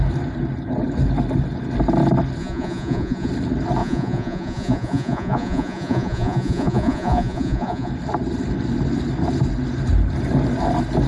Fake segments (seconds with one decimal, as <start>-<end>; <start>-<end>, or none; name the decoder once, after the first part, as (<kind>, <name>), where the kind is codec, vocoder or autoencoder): 2.4-3.3 (vocoder, Vocos); 3.8-7.9